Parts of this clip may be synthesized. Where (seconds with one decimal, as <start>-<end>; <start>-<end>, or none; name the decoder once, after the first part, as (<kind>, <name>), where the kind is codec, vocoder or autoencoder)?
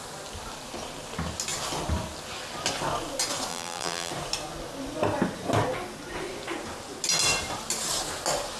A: 3.5-4.1 (vocoder, BigVGAN v2)